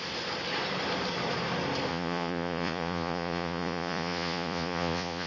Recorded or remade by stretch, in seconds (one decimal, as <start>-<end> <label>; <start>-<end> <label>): 0.0-1.9 recorded; 1.9-5.3 remade